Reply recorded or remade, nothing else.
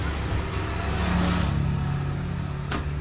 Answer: recorded